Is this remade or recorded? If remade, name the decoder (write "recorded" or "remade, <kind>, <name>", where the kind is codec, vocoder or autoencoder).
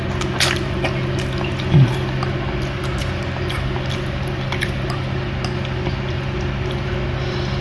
recorded